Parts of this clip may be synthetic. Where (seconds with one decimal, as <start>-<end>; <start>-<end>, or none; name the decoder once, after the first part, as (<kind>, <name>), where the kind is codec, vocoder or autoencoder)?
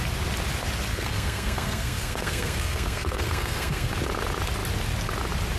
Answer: 0.9-3.9 (codec, SNAC)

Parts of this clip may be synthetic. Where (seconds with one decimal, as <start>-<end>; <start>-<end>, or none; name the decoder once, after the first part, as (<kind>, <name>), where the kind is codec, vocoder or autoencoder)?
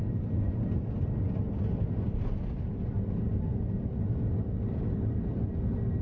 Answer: none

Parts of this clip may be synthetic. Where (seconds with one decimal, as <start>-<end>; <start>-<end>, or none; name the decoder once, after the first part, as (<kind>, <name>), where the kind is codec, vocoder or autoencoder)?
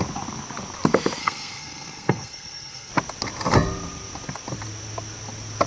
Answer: 1.2-2.9 (codec, SNAC)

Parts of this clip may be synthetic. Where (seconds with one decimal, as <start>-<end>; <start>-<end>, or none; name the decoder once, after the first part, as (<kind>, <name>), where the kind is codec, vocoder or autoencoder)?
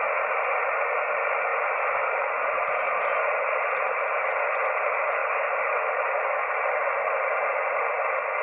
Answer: none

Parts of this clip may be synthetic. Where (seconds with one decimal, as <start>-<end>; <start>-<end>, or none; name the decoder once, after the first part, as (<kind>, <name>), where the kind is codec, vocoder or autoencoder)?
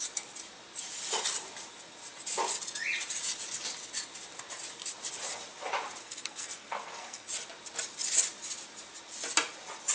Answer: 6.0-7.3 (codec, SNAC)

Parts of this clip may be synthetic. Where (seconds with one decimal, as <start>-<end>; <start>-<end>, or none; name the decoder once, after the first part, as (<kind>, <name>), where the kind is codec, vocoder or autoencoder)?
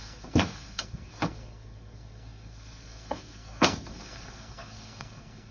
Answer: 0.0-5.5 (codec, SNAC)